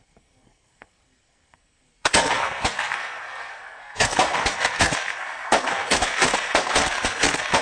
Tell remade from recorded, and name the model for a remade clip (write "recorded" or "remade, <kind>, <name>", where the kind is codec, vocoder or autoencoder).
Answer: remade, codec, SNAC